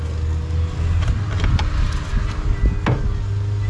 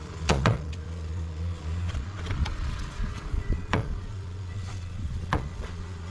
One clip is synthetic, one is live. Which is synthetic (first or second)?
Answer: second